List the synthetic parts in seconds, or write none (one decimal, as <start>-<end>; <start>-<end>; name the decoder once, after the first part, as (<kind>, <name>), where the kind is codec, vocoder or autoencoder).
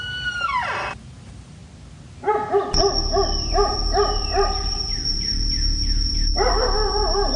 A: 0.0-1.6 (vocoder, BigVGAN v2); 3.5-7.4